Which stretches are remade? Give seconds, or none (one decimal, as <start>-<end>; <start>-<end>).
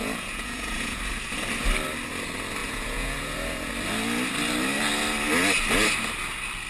0.0-1.0; 2.6-3.7